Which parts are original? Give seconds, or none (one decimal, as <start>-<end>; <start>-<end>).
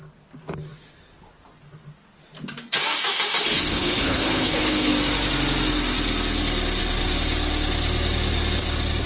0.0-3.7; 4.9-9.1